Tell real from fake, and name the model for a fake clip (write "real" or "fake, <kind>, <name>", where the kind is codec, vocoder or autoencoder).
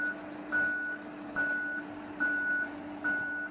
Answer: real